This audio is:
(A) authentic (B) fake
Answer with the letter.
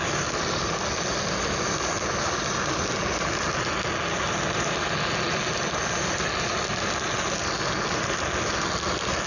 A